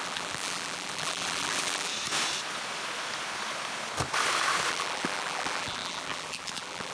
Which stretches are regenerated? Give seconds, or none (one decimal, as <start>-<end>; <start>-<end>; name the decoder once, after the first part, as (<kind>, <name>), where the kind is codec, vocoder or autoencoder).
0.0-1.9 (vocoder, BigVGAN v2); 4.7-6.9